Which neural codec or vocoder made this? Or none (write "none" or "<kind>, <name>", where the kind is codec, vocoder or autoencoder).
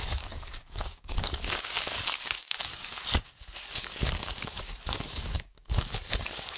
codec, DAC